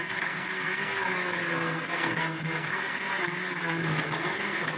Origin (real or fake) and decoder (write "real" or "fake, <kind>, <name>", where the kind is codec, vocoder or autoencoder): fake, codec, SNAC